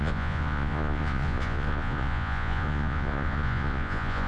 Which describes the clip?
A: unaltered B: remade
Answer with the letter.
B